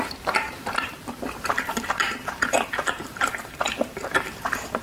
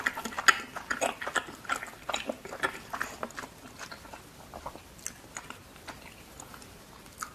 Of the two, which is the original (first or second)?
second